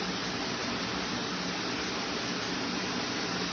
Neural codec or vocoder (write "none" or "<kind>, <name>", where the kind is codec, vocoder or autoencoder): none